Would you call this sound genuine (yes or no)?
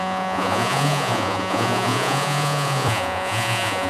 no